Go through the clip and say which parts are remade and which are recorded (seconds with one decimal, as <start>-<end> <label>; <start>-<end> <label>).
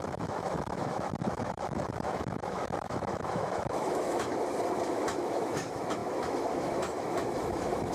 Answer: 0.0-4.3 remade; 4.3-4.8 recorded; 4.8-7.9 remade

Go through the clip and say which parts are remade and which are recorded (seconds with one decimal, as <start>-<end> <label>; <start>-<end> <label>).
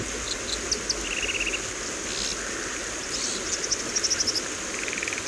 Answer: 0.0-5.3 recorded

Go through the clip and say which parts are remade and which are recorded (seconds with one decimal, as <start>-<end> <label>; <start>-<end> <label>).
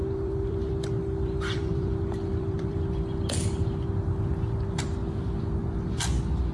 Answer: 0.0-2.8 remade; 2.8-6.5 recorded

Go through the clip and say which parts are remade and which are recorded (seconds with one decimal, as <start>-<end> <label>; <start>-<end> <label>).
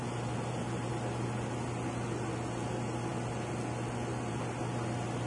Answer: 0.0-5.3 recorded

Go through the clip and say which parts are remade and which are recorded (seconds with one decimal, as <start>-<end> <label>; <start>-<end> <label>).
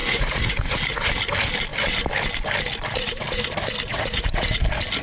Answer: 0.0-1.1 remade; 1.1-3.9 recorded; 3.9-4.6 remade; 4.6-5.0 recorded